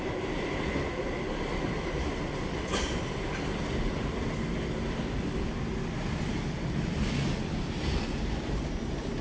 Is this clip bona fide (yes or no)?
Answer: yes